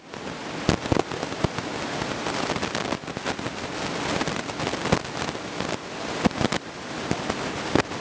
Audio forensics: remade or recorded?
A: recorded